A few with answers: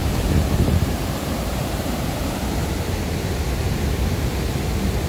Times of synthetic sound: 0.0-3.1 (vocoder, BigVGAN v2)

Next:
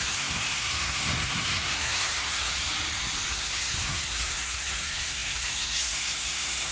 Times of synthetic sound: 0.0-2.5 (codec, SNAC); 3.3-6.7

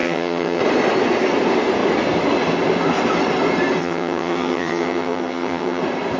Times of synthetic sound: 0.0-0.6 (vocoder, HiFi-GAN); 3.8-5.8

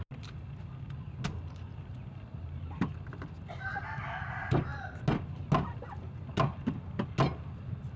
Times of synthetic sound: none

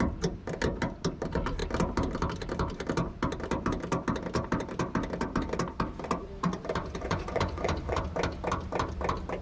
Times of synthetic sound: 6.8-8.0 (vocoder, Vocos)

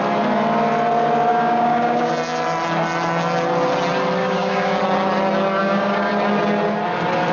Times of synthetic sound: 1.3-2.1 (codec, DAC); 4.2-4.8; 5.6-6.1

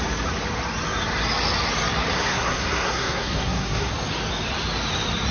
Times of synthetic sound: 2.1-3.9 (codec, SNAC)